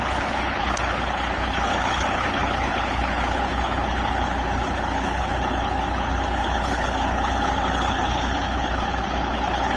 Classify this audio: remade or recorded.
remade